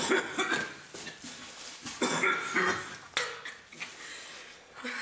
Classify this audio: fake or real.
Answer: real